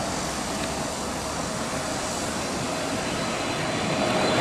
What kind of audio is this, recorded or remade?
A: remade